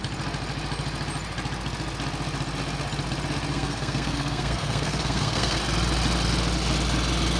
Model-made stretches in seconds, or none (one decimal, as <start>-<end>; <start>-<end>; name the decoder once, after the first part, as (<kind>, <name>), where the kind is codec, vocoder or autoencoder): 3.5-5.6 (codec, SNAC)